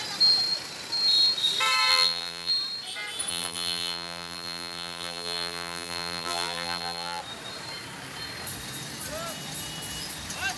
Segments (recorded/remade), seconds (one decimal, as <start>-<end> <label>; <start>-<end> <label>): 0.0-1.9 recorded; 1.9-2.5 remade; 2.5-3.3 recorded; 3.3-7.2 remade; 7.2-10.6 recorded